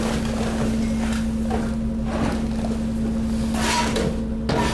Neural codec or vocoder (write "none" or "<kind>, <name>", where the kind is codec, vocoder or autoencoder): none